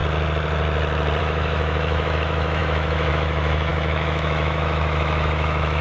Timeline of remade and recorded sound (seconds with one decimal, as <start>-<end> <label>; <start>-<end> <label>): 0.0-1.2 recorded; 1.2-5.8 remade